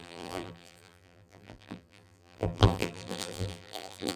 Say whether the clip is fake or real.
fake